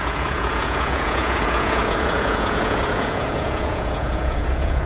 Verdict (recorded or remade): remade